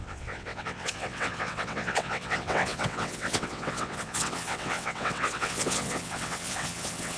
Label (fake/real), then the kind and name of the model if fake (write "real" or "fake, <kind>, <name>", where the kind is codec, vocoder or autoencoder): fake, vocoder, WaveNeXt